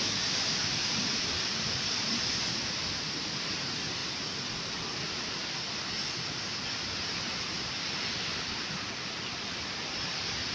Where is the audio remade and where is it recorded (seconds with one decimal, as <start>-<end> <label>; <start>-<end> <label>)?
0.0-4.0 remade; 4.0-7.5 recorded; 7.5-10.5 remade